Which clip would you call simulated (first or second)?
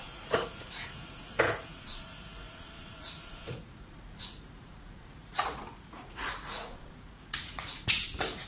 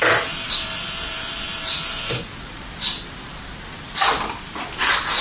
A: first